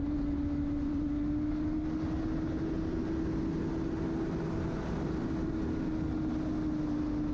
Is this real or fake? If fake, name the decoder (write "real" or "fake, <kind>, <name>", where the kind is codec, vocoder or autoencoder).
real